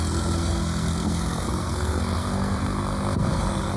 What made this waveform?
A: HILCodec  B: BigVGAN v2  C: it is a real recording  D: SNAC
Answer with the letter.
D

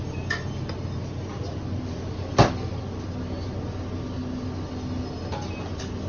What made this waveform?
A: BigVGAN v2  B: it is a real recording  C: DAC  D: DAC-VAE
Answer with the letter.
B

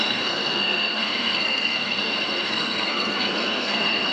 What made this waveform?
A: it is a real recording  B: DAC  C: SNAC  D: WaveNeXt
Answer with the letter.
C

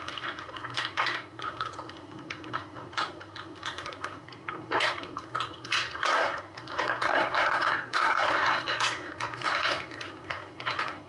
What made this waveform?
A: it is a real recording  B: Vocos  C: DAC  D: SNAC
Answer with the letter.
D